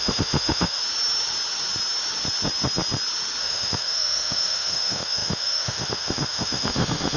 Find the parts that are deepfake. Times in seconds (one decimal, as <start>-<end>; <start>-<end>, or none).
0.0-0.8; 3.4-7.2